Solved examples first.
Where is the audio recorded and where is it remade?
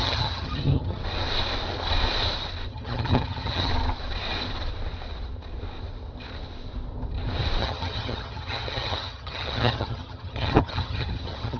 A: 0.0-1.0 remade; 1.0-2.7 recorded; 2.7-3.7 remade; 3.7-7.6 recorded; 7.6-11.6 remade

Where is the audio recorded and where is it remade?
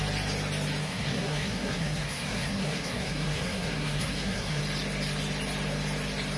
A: 0.0-0.8 recorded; 0.8-4.6 remade; 4.6-6.4 recorded